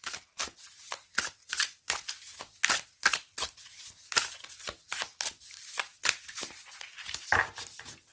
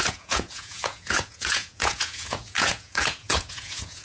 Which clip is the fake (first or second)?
second